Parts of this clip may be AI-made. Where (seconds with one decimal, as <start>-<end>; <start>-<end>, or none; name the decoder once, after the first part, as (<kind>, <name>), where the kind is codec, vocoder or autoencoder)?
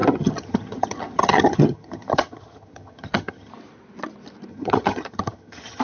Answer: 0.0-3.5 (vocoder, HiFi-GAN); 4.5-5.8